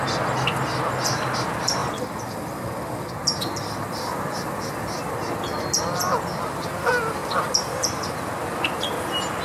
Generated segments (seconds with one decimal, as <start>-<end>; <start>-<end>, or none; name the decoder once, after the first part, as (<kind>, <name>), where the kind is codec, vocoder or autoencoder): none